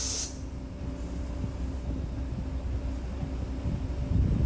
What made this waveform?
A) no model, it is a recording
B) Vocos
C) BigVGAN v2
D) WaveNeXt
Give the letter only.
A